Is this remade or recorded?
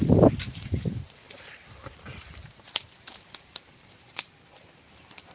remade